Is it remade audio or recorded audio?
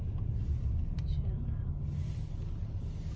recorded